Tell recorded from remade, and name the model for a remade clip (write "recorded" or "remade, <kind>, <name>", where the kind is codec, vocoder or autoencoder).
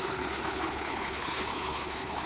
remade, codec, HILCodec